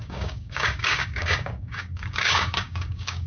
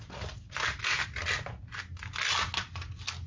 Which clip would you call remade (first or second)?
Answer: first